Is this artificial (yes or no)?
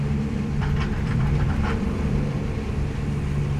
yes